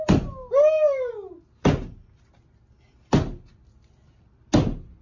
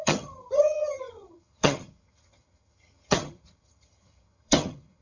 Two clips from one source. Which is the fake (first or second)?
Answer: second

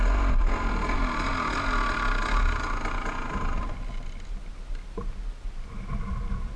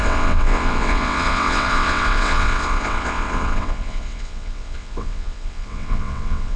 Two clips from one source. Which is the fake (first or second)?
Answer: second